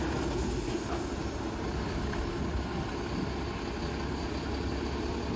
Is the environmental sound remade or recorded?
recorded